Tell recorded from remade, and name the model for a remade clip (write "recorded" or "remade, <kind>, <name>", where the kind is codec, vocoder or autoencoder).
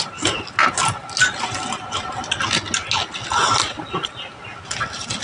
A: recorded